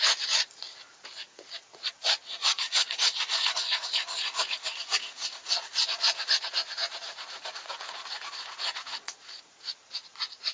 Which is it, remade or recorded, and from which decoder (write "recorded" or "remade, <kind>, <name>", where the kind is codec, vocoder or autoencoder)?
remade, vocoder, Vocos